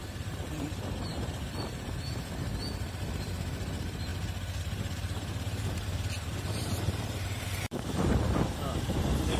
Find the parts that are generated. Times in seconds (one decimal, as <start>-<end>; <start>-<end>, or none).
0.0-2.5; 3.4-4.1; 4.6-9.4